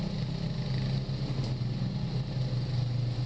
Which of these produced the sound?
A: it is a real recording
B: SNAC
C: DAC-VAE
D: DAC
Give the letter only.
A